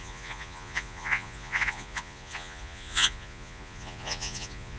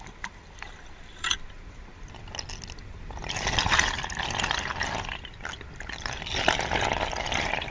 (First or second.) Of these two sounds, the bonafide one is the second